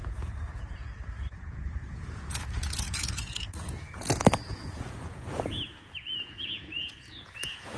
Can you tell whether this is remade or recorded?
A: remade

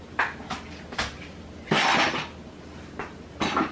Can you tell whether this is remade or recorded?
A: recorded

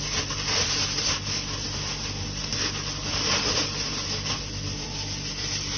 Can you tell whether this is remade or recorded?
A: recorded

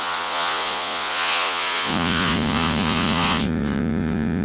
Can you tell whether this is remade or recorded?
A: remade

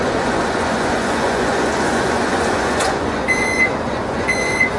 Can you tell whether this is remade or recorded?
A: remade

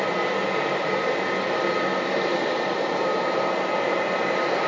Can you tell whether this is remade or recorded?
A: recorded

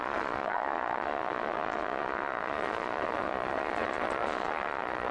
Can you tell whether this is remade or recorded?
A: remade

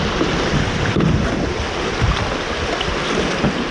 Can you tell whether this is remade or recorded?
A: recorded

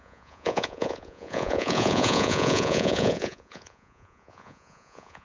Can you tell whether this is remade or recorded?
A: remade